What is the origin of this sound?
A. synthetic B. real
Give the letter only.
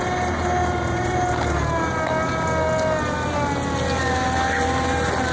B